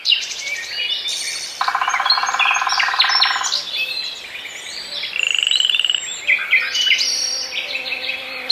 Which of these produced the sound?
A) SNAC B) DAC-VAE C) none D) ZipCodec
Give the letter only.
C